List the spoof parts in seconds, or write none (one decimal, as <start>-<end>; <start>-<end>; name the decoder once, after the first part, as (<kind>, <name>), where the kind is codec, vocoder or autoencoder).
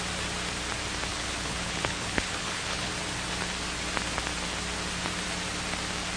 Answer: 1.1-2.9 (codec, HILCodec)